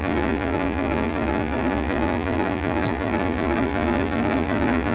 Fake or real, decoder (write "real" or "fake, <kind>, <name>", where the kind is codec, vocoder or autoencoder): fake, vocoder, BigVGAN v2